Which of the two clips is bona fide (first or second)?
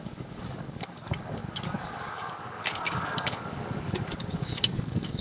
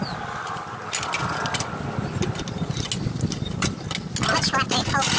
second